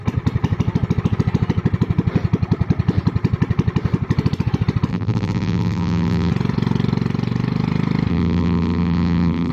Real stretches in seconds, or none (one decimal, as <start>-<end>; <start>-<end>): 0.0-4.9; 6.3-8.1